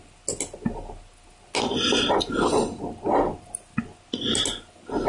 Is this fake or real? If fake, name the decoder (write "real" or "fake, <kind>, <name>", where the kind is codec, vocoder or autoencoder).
real